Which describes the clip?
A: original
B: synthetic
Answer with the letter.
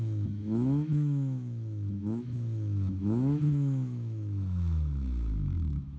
B